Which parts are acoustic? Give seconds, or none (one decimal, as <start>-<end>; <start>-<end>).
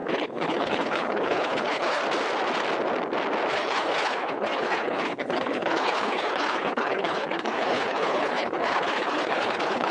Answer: 2.0-3.5